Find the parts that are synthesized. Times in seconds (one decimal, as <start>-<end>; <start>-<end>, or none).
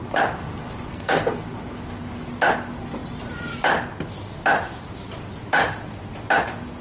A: 0.9-1.4